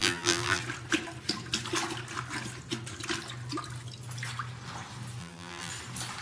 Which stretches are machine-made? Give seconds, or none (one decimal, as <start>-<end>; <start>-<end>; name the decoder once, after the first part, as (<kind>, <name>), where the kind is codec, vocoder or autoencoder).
0.0-0.6 (vocoder, BigVGAN v2); 5.2-5.7